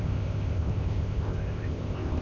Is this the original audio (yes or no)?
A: no